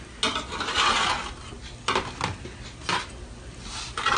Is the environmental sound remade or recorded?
recorded